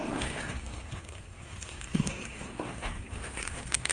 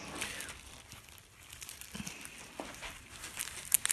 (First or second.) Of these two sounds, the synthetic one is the first